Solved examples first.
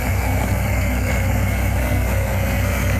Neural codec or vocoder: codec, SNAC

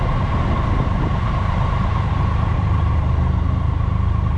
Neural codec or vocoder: none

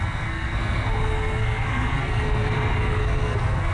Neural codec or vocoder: codec, SNAC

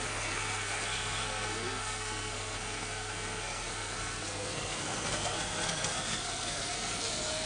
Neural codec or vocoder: codec, SNAC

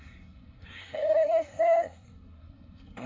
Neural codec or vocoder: codec, SNAC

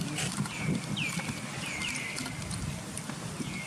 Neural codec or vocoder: none